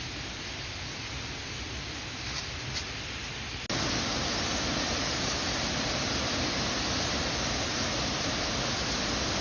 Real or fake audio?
real